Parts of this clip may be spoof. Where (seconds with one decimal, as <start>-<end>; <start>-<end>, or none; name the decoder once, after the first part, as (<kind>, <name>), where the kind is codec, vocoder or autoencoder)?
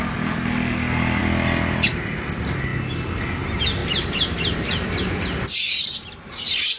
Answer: none